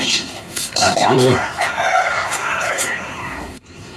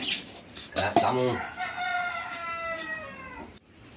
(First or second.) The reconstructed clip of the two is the first